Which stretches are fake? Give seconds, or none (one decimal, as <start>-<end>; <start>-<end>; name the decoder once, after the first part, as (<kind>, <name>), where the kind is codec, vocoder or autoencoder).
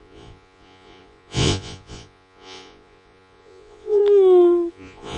0.0-4.0 (vocoder, Vocos); 4.7-5.2